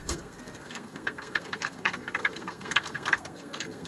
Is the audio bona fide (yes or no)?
no